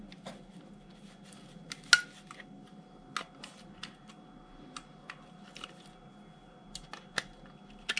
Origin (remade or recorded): recorded